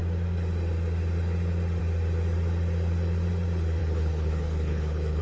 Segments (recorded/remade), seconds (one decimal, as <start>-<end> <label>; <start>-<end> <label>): 0.0-3.8 recorded; 3.8-5.2 remade